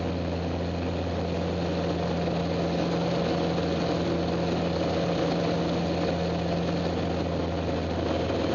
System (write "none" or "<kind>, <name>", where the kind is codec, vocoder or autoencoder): none